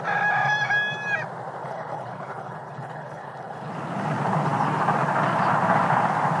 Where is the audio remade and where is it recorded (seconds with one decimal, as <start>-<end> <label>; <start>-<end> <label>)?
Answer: 0.0-1.6 recorded; 1.6-3.7 remade; 3.7-6.4 recorded